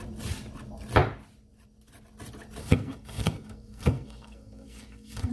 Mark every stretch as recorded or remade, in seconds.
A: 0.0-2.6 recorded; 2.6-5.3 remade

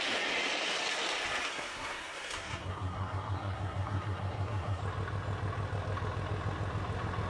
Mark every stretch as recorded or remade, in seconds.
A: 0.0-1.5 recorded; 1.5-4.8 remade; 4.8-7.3 recorded

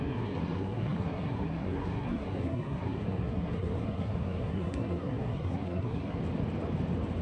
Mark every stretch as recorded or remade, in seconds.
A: 0.0-6.2 remade; 6.2-7.2 recorded

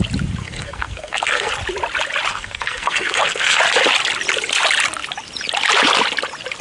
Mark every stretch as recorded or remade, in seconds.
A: 0.0-0.4 recorded; 0.4-1.5 remade; 1.5-2.3 recorded; 2.3-3.6 remade; 3.6-6.6 recorded